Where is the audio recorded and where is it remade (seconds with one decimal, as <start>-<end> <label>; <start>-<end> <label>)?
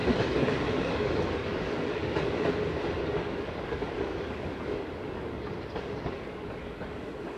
0.0-2.5 remade; 2.5-3.0 recorded; 3.0-7.4 remade